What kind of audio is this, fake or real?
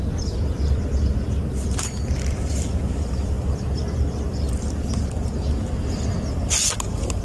real